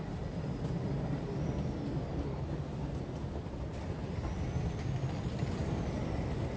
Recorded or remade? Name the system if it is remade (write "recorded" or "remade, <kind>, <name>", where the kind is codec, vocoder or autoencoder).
recorded